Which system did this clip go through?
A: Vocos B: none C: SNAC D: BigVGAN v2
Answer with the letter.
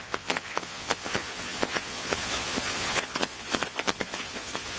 A